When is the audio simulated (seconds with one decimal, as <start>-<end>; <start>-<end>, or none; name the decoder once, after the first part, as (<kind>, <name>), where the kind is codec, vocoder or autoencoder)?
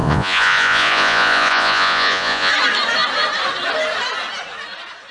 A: 0.0-2.5 (vocoder, Vocos)